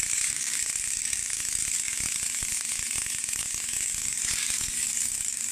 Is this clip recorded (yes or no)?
no